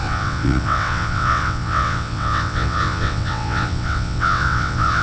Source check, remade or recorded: remade